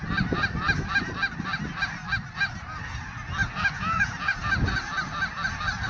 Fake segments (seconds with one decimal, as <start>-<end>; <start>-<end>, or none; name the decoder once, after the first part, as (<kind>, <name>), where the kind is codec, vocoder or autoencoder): 3.4-4.5 (vocoder, Vocos)